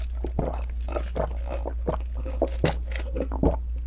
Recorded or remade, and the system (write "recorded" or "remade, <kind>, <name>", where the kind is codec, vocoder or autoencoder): recorded